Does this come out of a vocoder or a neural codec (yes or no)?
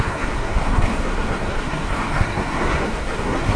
yes